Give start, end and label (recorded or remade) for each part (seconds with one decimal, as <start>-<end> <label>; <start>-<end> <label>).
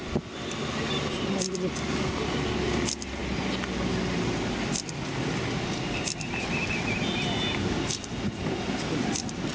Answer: 0.0-9.5 recorded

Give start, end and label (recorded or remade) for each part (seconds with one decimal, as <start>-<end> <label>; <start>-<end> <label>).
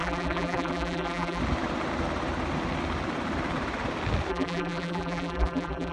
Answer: 0.0-1.4 remade; 1.4-4.3 recorded; 4.3-5.9 remade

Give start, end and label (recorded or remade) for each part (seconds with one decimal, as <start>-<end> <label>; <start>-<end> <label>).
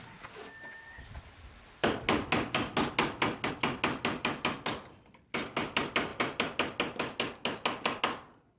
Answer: 0.0-8.6 recorded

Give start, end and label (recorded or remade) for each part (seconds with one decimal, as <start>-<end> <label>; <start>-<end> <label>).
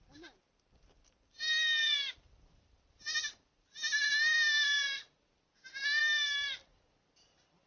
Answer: 0.0-1.8 recorded; 1.8-5.4 remade; 5.4-7.7 recorded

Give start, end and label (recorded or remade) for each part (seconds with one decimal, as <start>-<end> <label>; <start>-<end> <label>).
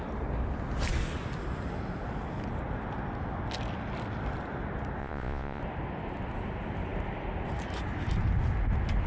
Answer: 0.0-5.0 recorded; 5.0-5.6 remade; 5.6-9.1 recorded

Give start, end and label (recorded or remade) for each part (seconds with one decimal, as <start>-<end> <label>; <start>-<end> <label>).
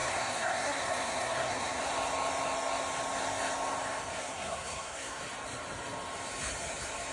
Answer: 0.0-1.8 remade; 1.8-4.2 recorded; 4.2-5.2 remade; 5.2-7.1 recorded